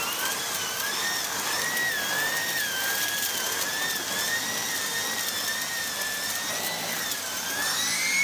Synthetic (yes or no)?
no